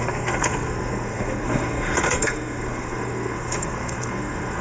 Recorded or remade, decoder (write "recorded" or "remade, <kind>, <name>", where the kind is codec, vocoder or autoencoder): remade, codec, SNAC